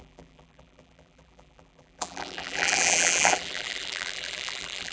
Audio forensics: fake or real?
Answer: fake